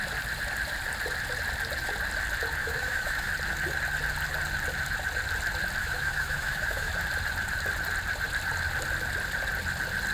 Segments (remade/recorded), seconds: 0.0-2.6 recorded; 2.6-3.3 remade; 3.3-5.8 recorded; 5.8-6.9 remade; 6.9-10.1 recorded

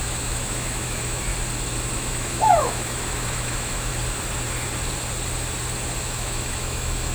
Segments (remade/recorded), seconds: 0.0-1.3 remade; 1.3-1.9 recorded; 1.9-3.9 remade; 3.9-6.0 recorded; 6.0-7.1 remade

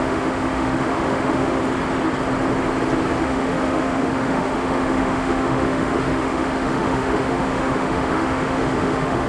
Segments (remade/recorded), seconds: 0.0-1.6 remade; 1.6-3.2 recorded; 3.2-9.3 remade